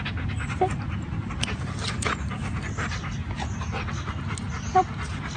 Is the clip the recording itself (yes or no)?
yes